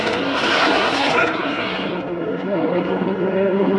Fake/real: fake